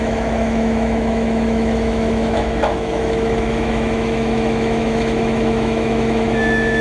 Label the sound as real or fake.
fake